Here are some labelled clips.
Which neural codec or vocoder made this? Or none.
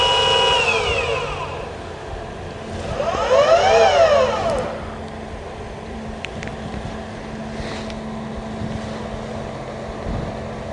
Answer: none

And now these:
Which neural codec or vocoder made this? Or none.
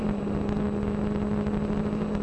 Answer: none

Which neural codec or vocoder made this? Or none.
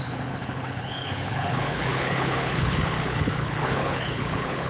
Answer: codec, HILCodec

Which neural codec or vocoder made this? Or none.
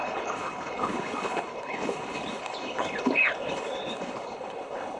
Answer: codec, HILCodec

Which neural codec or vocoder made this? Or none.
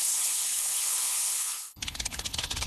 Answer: codec, HILCodec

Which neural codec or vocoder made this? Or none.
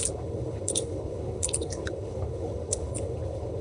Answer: codec, HILCodec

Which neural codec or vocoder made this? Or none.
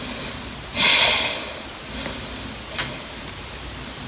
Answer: none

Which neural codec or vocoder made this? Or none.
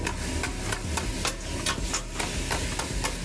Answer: none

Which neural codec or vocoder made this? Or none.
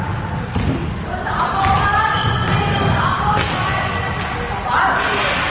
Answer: none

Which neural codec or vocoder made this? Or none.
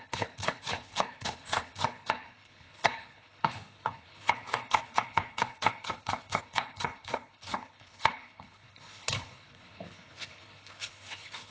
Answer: codec, HILCodec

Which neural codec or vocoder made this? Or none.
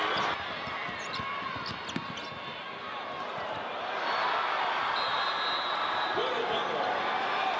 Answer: none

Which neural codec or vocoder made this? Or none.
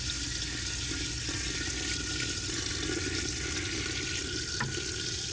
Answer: none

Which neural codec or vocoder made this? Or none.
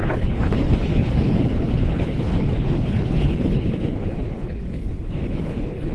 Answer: codec, HILCodec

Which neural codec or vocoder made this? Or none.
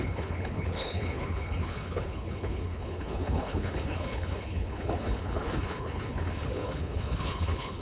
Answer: codec, HILCodec